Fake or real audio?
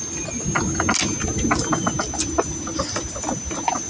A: real